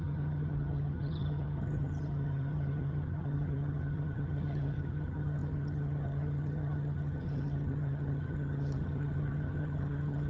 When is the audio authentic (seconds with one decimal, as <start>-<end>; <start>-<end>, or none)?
none